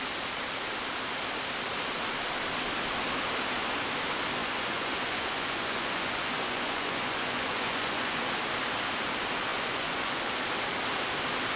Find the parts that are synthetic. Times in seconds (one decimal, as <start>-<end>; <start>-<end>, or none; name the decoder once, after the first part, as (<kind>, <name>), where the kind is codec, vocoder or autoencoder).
4.4-8.2 (vocoder, Vocos); 9.5-10.2

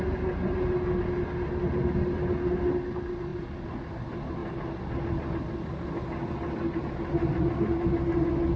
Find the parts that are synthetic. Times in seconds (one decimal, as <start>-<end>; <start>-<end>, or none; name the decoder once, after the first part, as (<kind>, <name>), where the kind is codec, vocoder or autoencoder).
none

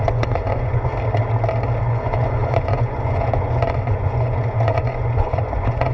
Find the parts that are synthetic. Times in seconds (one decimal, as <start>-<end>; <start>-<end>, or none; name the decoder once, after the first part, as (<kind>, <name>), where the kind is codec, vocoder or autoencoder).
0.0-0.9 (vocoder, Vocos); 1.8-5.9